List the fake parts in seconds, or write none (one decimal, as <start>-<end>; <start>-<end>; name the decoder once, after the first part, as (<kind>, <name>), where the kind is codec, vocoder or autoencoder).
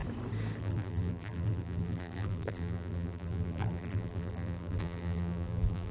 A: 0.6-5.9 (vocoder, BigVGAN v2)